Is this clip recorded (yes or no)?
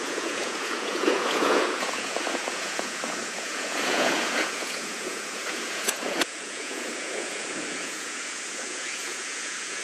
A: no